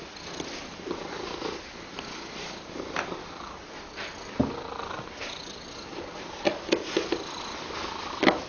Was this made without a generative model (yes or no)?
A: yes